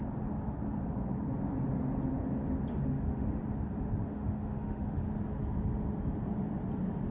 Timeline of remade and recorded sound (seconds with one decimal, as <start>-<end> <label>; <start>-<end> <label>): 0.0-2.7 recorded; 2.7-3.4 remade; 3.4-4.1 recorded; 4.1-5.0 remade; 5.0-7.1 recorded